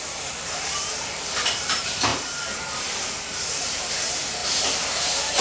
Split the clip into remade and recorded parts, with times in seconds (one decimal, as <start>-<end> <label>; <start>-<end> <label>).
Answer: 0.0-5.4 remade